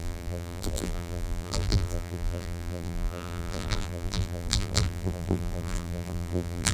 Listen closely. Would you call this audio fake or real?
fake